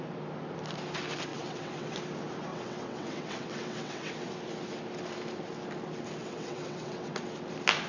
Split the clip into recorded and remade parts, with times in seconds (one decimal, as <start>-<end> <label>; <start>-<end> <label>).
0.0-1.3 recorded; 1.3-2.0 remade; 2.0-2.5 recorded; 2.5-4.3 remade; 4.3-6.2 recorded; 6.2-7.2 remade; 7.2-7.9 recorded